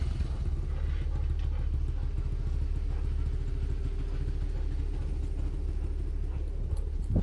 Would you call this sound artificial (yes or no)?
no